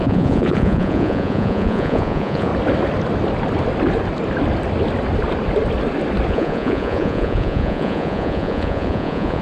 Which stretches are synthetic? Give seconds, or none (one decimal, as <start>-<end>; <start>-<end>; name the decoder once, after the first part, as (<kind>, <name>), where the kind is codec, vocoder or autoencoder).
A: 0.0-2.5 (vocoder, Vocos); 6.3-9.4